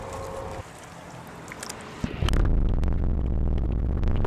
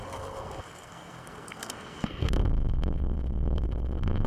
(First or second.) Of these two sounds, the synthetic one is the second